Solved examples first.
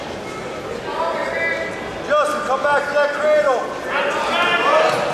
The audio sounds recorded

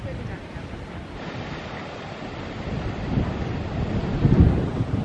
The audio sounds recorded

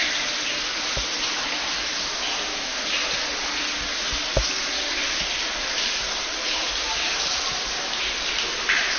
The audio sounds recorded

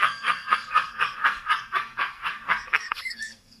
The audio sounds remade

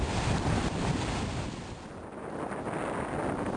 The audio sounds recorded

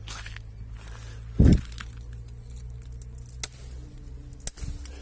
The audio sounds recorded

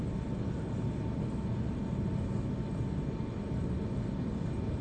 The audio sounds recorded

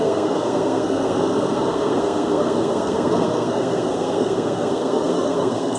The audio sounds remade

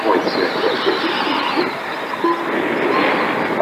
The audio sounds recorded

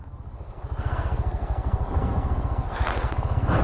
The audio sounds remade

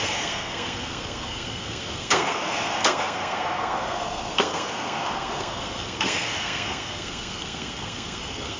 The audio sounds remade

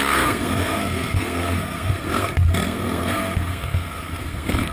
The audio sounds remade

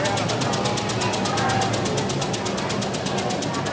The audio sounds recorded